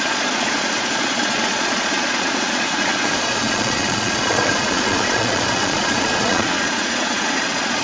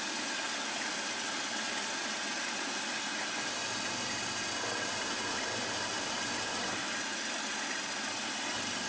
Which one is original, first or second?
second